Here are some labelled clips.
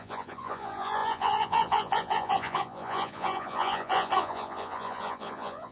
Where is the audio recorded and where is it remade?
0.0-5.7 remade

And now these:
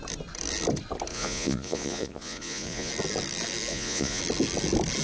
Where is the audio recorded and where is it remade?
0.0-1.1 recorded; 1.1-2.9 remade; 2.9-3.7 recorded; 3.7-4.2 remade; 4.2-5.0 recorded